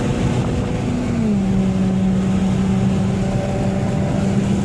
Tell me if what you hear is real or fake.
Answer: real